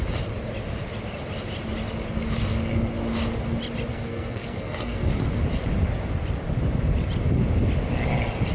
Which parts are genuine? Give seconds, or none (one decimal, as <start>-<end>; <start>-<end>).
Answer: 0.0-3.9; 5.4-8.5